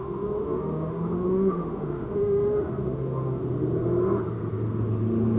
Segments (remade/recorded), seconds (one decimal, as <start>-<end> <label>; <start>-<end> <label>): 0.0-3.4 remade; 3.4-5.4 recorded